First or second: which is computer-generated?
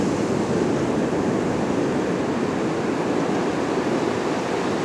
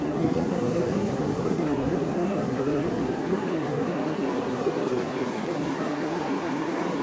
second